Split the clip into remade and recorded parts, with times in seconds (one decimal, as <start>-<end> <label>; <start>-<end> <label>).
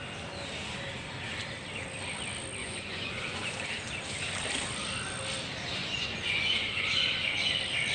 0.0-2.6 recorded; 2.6-3.5 remade; 3.5-5.8 recorded; 5.8-7.5 remade; 7.5-7.9 recorded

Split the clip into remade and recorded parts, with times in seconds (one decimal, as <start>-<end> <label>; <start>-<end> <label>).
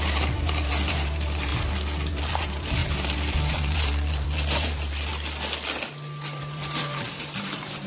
0.0-1.5 remade; 1.5-2.1 recorded; 2.1-5.1 remade; 5.1-6.4 recorded; 6.4-7.9 remade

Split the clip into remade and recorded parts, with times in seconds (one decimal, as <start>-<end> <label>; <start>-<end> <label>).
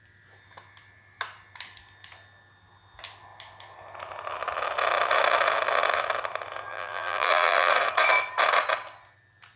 0.0-6.7 recorded; 6.7-7.7 remade; 7.7-9.6 recorded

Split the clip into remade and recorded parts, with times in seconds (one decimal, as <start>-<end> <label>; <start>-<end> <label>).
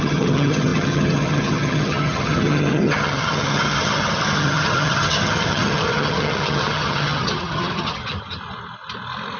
0.0-8.4 remade; 8.4-9.4 recorded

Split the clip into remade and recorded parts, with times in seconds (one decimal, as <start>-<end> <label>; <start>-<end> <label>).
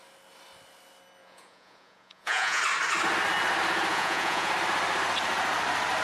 0.0-1.2 recorded; 1.2-2.6 remade; 2.6-3.9 recorded; 3.9-4.5 remade; 4.5-6.0 recorded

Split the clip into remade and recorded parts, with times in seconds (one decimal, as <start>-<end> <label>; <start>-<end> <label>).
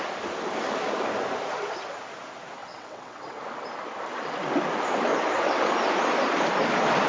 0.0-2.6 recorded; 2.6-3.4 remade; 3.4-5.1 recorded; 5.1-5.7 remade; 5.7-7.1 recorded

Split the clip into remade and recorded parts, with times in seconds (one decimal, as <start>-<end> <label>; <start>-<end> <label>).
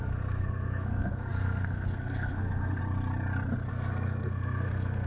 0.0-2.8 remade; 2.8-3.7 recorded; 3.7-5.1 remade